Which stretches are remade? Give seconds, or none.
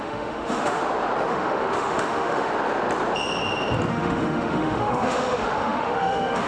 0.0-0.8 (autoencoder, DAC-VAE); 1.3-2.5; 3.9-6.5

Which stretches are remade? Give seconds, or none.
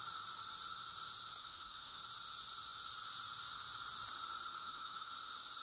1.4-2.0 (autoencoder, DAC-VAE); 4.6-5.1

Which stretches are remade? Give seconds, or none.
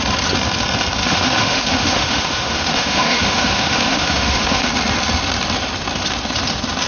1.0-4.7 (autoencoder, DAC-VAE)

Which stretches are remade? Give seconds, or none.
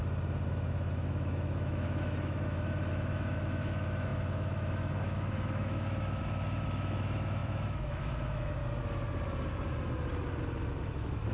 0.5-8.6 (autoencoder, DAC-VAE); 10.8-11.3